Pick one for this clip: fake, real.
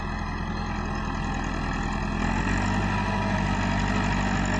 real